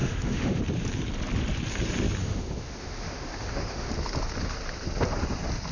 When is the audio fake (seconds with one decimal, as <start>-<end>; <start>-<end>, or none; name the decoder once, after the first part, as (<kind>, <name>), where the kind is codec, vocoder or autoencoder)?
0.0-0.6 (autoencoder, DAC-VAE); 2.2-3.9